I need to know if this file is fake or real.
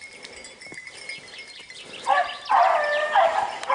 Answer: real